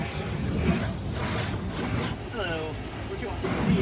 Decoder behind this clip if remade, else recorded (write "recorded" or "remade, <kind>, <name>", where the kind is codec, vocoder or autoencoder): recorded